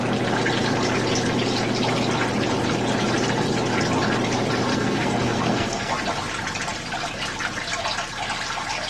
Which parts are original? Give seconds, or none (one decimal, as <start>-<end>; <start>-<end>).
0.0-4.7; 5.9-8.9